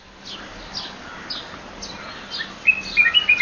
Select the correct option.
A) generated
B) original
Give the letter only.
B